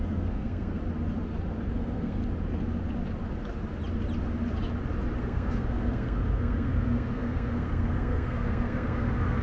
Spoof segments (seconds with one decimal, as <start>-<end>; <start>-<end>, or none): 0.0-0.8; 1.7-2.2; 5.2-9.4